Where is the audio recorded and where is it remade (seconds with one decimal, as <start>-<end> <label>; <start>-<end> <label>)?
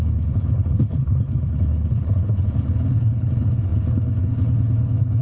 0.0-5.2 remade